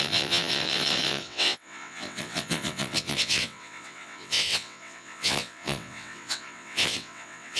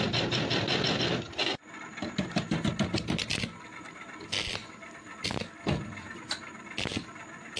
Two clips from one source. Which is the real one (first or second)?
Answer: second